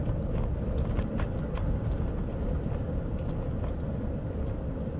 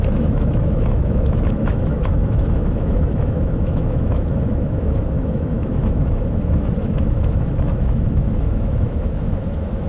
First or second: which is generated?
second